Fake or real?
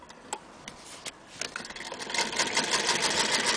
real